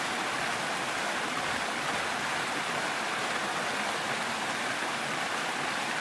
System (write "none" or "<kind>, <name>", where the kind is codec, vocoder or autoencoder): none